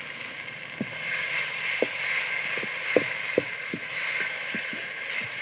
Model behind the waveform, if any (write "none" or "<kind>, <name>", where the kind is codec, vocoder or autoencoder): none